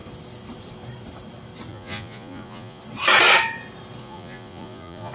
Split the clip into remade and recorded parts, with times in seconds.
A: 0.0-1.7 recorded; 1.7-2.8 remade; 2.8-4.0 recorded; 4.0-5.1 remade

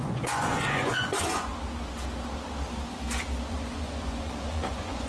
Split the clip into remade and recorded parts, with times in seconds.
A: 0.0-1.5 remade; 1.5-3.5 recorded; 3.5-5.1 remade

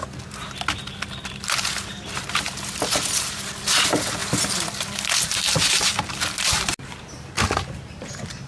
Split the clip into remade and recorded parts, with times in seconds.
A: 0.0-8.5 recorded

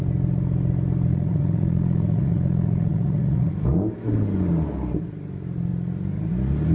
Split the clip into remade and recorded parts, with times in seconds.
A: 0.0-1.1 recorded; 1.1-3.5 remade; 3.5-6.7 recorded

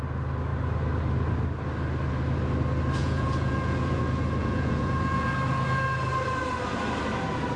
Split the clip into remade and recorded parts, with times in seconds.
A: 0.0-3.0 recorded; 3.0-4.0 remade; 4.0-4.4 recorded; 4.4-5.3 remade; 5.3-7.6 recorded